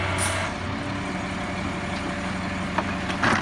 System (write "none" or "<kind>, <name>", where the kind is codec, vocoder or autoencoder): none